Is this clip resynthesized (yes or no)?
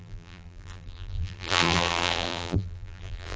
yes